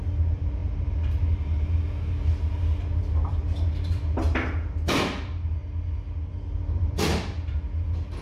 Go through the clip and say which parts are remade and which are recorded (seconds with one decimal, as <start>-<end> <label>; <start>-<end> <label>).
0.0-8.2 recorded